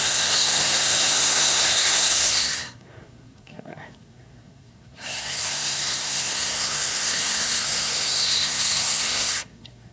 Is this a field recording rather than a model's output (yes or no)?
no